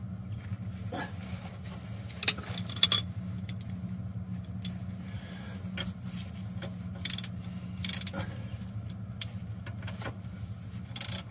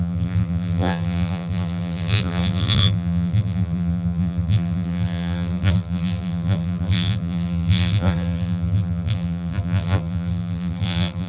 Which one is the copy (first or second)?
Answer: second